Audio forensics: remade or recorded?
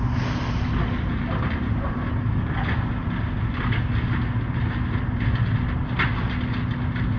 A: recorded